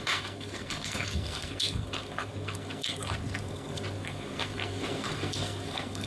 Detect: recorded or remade remade